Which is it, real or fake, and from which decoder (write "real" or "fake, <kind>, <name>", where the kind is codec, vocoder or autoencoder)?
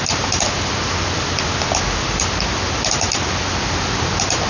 real